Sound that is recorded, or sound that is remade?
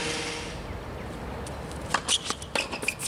recorded